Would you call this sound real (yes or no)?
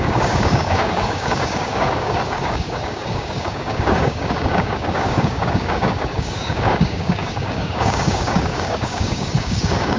no